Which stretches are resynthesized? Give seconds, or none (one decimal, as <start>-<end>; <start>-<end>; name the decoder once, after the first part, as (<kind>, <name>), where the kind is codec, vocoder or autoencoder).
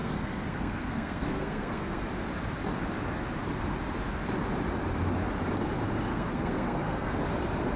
0.0-2.0 (codec, SNAC); 6.1-7.2